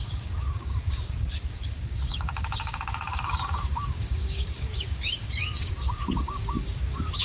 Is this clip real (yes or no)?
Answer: no